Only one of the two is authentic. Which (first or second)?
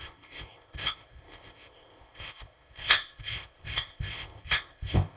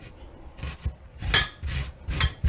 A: second